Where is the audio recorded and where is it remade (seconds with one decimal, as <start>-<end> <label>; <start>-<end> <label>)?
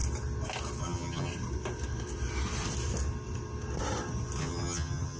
0.0-0.8 recorded; 0.8-1.3 remade; 1.3-4.4 recorded; 4.4-5.2 remade